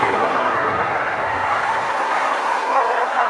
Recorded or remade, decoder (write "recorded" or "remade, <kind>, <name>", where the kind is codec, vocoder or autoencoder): remade, codec, SNAC